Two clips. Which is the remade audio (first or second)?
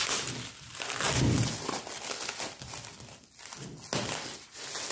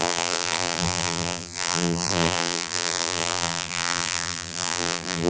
second